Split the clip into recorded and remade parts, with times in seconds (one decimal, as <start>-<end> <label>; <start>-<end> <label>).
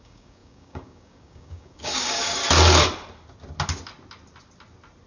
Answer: 0.0-2.4 remade; 2.4-5.1 recorded